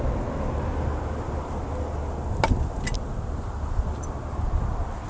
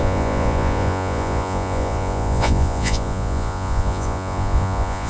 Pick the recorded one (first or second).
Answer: first